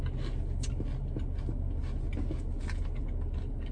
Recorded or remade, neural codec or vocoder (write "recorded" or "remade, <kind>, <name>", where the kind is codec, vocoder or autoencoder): recorded